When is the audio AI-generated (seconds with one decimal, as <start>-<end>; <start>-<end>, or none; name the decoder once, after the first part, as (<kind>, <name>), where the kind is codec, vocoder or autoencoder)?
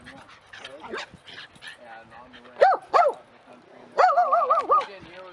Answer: none